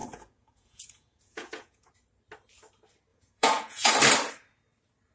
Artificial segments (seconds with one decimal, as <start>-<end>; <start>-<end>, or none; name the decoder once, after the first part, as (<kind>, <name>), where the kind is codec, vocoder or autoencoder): 0.0-1.9 (vocoder, Vocos); 3.1-3.9